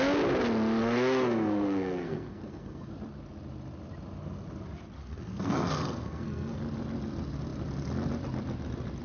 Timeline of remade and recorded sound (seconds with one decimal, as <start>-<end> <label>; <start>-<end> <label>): 0.0-0.8 recorded; 0.8-2.9 remade; 2.9-5.0 recorded; 5.0-6.6 remade; 6.6-9.0 recorded